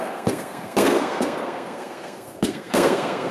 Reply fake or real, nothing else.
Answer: fake